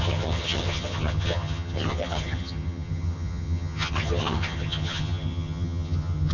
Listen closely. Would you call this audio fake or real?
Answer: fake